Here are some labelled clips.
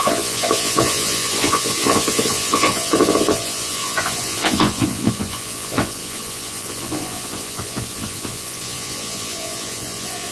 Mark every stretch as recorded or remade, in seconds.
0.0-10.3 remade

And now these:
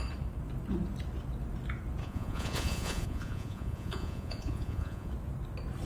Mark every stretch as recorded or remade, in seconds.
0.0-2.0 recorded; 2.0-5.1 remade; 5.1-5.9 recorded

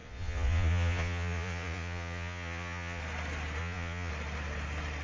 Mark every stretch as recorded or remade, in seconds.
0.0-3.0 remade; 3.0-3.6 recorded; 3.6-4.1 remade; 4.1-5.0 recorded

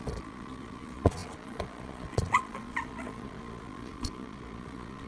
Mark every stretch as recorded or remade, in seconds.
0.0-5.1 remade